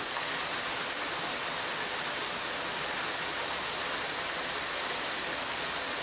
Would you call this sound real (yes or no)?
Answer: yes